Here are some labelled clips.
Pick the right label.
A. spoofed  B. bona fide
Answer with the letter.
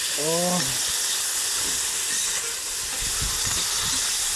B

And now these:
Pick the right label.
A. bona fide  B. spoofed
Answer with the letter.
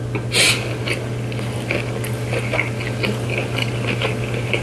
A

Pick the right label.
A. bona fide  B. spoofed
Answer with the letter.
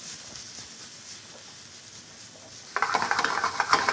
A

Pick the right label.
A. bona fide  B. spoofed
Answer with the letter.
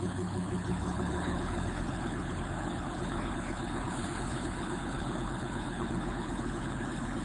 B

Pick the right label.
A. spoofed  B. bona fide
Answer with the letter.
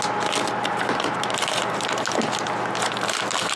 B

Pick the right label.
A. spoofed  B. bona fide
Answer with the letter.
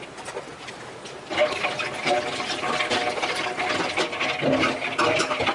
B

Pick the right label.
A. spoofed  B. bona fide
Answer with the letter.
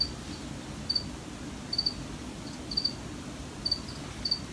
B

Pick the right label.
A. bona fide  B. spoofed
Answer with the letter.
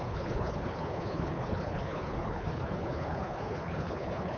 B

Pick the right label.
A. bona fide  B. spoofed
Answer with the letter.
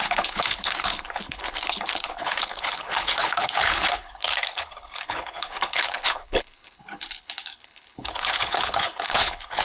B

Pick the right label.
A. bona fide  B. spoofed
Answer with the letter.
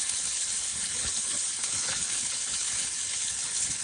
B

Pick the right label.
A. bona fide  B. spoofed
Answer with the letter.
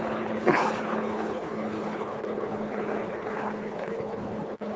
B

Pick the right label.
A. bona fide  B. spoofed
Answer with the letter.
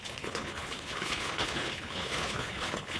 B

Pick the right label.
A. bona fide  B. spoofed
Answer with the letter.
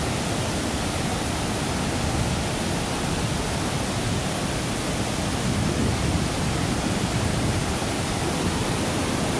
A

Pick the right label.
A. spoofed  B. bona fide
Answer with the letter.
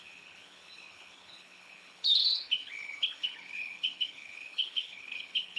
A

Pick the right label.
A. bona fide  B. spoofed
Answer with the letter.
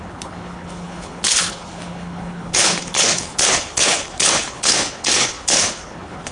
B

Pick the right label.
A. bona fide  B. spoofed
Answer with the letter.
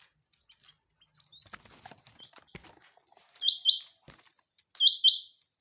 A